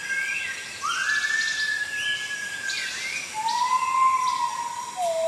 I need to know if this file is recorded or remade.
recorded